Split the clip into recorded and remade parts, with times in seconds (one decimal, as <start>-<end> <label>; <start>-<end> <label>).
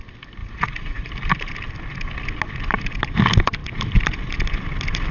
0.0-0.4 recorded; 0.4-1.1 remade; 1.1-5.1 recorded